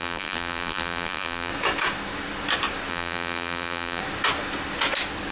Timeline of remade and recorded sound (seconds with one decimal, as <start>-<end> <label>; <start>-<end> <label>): 0.0-1.5 remade; 1.5-2.9 recorded; 2.9-4.0 remade; 4.0-5.3 recorded